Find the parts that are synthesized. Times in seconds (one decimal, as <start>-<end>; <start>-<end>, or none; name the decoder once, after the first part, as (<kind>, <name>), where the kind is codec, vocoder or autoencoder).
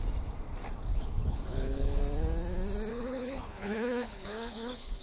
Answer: 0.9-2.0 (codec, HILCodec); 2.9-5.0